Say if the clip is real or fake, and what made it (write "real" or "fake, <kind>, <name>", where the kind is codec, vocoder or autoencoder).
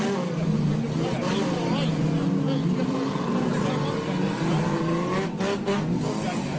real